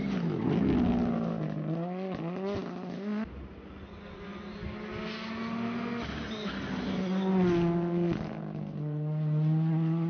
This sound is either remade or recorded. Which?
recorded